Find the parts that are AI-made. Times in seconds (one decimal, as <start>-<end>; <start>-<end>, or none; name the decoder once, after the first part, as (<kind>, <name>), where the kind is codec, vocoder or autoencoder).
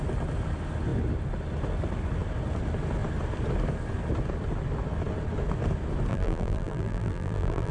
6.1-7.7 (vocoder, BigVGAN v2)